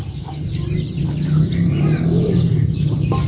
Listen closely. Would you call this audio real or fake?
real